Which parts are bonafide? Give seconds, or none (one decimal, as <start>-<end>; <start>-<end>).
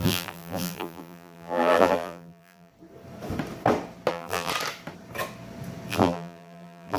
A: 2.7-4.1; 4.5-5.9